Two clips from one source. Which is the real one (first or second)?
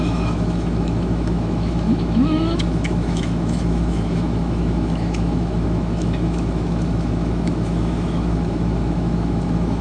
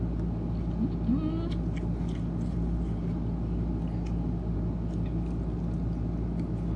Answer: second